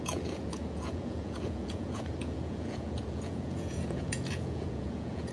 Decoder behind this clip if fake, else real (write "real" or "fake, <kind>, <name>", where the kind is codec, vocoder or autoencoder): fake, vocoder, Vocos